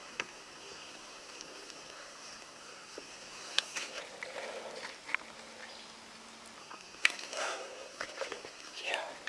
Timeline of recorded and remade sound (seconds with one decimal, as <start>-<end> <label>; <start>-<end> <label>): 0.0-4.0 remade; 4.0-6.6 recorded; 6.6-8.9 remade; 8.9-9.3 recorded